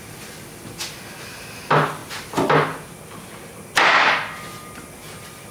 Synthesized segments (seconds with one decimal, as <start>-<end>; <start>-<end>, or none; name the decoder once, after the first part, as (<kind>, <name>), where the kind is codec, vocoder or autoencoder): none